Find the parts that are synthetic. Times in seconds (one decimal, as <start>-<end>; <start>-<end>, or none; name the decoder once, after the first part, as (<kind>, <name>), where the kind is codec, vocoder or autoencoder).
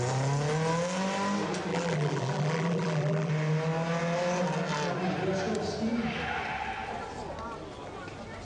1.7-3.3 (vocoder, BigVGAN v2)